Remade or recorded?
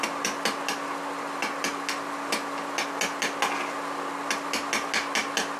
recorded